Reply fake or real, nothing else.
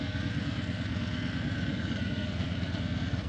fake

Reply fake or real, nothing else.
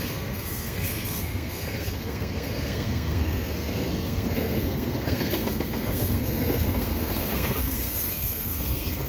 fake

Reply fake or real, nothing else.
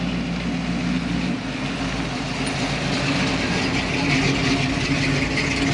real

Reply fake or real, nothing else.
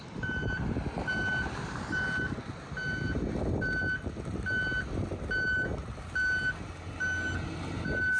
real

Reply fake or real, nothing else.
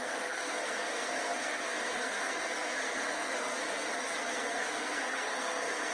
fake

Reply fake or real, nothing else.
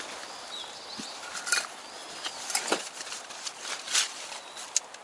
real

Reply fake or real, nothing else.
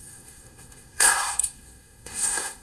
fake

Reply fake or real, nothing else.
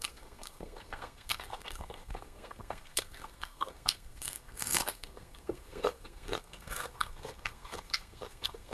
fake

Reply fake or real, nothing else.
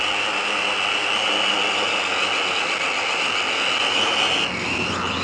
real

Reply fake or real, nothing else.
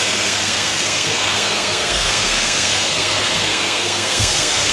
fake